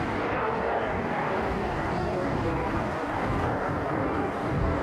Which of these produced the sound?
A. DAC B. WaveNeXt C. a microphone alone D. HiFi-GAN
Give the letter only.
A